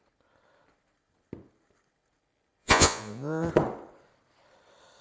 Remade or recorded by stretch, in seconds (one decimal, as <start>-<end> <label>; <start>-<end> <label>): 0.0-2.6 recorded; 2.6-3.5 remade; 3.5-5.0 recorded